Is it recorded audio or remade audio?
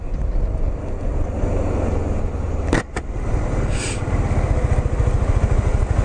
recorded